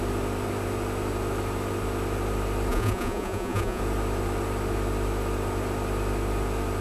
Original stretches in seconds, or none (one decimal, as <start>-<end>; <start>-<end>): 0.0-2.7; 3.8-6.8